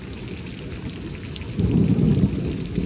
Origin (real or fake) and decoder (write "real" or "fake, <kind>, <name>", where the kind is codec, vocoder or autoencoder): real